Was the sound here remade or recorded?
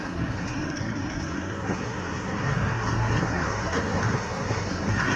remade